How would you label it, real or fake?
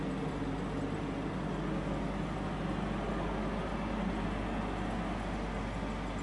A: real